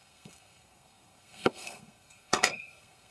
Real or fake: fake